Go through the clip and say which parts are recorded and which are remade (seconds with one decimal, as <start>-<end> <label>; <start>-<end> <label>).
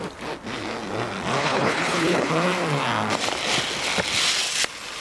0.0-1.4 recorded; 1.4-2.3 remade; 2.3-5.0 recorded